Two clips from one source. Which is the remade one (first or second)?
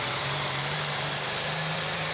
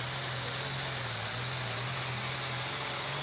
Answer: first